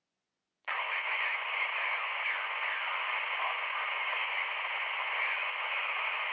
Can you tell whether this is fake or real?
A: fake